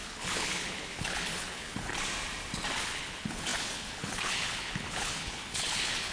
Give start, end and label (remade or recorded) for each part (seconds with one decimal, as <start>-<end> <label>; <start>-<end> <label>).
0.0-1.9 remade; 1.9-2.8 recorded; 2.8-6.1 remade

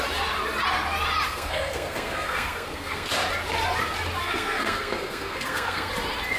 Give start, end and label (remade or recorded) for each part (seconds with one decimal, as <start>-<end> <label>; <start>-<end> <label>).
0.0-1.3 recorded; 1.3-3.1 remade; 3.1-4.2 recorded; 4.2-5.9 remade; 5.9-6.4 recorded

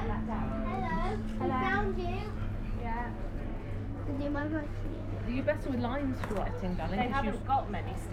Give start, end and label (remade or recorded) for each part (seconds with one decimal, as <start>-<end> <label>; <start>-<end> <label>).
0.0-0.7 recorded; 0.7-1.2 remade; 1.2-4.4 recorded; 4.4-5.4 remade; 5.4-6.2 recorded; 6.2-6.8 remade; 6.8-8.1 recorded

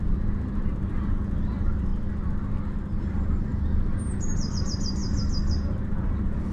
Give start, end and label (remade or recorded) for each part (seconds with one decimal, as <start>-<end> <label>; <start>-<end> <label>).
0.0-1.9 remade; 1.9-3.0 recorded; 3.0-5.0 remade; 5.0-5.5 recorded; 5.5-6.5 remade

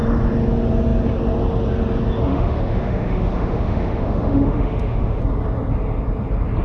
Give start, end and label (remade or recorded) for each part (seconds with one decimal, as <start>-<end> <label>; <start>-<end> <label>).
0.0-2.3 recorded; 2.3-5.2 remade; 5.2-6.6 recorded

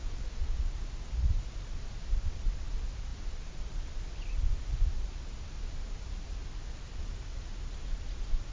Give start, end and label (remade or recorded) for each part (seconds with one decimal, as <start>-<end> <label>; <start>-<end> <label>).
0.0-0.6 remade; 0.6-8.5 recorded

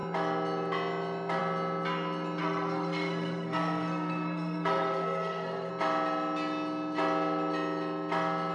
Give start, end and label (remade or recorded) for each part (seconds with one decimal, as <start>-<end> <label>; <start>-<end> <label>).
0.0-2.4 recorded; 2.4-5.7 remade; 5.7-8.5 recorded

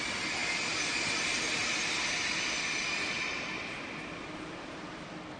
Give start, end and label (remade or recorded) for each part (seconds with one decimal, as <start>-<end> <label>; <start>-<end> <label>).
0.0-5.4 recorded